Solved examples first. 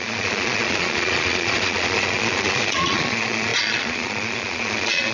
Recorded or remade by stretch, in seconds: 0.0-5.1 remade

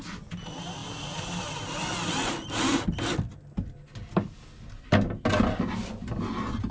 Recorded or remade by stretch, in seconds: 0.0-6.7 recorded

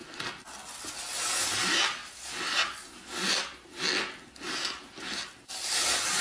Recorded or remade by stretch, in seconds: 0.0-6.2 recorded

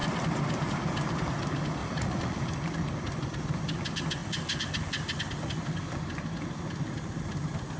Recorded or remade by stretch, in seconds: 0.0-1.8 recorded; 1.8-2.4 remade; 2.4-7.8 recorded

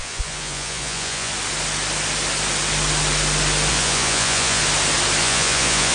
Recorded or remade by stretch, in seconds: 0.0-1.3 remade; 1.3-3.7 recorded; 3.7-4.6 remade; 4.6-5.2 recorded; 5.2-5.9 remade

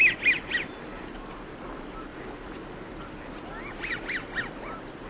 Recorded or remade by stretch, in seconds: 0.0-5.1 recorded

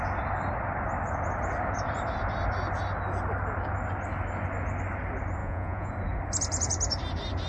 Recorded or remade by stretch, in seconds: 0.0-5.4 recorded; 5.4-5.9 remade; 5.9-7.5 recorded

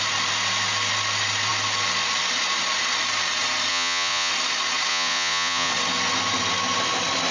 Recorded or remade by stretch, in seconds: 0.0-3.7 recorded; 3.7-4.3 remade; 4.3-4.9 recorded; 4.9-5.7 remade; 5.7-7.3 recorded